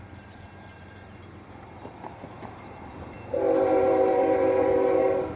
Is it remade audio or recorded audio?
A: remade